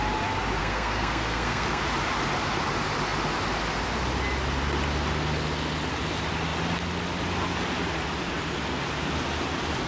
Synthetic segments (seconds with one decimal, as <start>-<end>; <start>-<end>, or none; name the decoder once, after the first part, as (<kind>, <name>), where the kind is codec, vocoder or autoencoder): 0.6-1.8 (codec, SNAC)